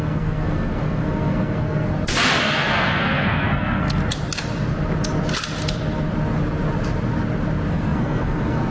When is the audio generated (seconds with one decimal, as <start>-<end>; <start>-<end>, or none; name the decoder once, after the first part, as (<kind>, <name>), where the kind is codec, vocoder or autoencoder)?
0.0-1.9 (codec, SNAC); 2.4-4.0; 7.7-8.7